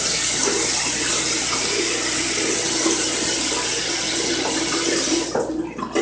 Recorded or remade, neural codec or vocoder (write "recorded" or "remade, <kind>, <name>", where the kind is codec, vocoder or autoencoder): recorded